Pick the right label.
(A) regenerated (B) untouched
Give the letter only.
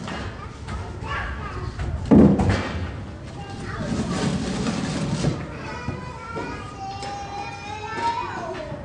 B